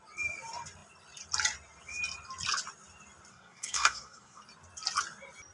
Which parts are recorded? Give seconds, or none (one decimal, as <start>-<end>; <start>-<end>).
0.0-3.3; 4.4-5.5